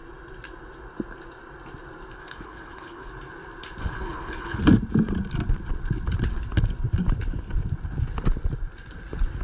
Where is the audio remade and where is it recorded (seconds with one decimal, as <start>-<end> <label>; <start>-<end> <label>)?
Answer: 0.0-2.2 recorded; 2.2-3.1 remade; 3.1-3.8 recorded; 3.8-4.6 remade; 4.6-9.4 recorded